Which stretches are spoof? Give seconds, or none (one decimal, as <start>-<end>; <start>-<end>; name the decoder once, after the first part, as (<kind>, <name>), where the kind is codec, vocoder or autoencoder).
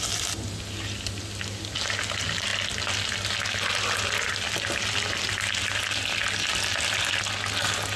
none